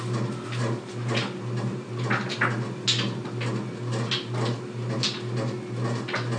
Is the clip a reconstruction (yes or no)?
no